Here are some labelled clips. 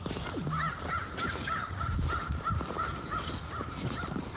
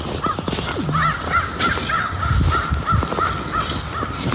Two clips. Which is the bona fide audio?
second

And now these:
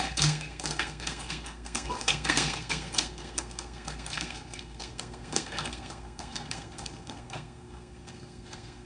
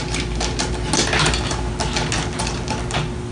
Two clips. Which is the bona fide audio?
second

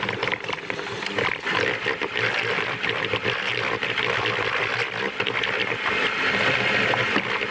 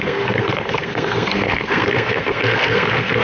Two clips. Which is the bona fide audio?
first